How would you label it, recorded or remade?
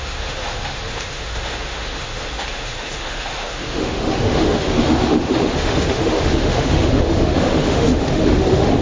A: remade